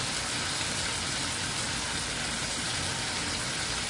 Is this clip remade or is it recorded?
recorded